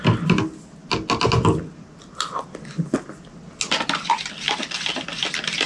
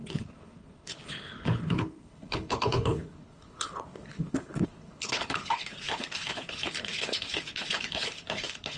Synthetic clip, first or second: second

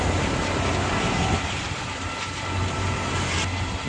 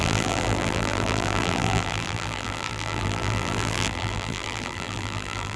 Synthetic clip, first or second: second